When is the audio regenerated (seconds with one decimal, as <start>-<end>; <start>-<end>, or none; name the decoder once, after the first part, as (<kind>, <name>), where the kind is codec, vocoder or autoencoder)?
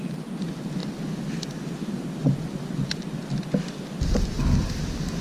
none